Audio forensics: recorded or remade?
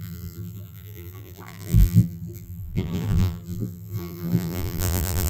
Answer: remade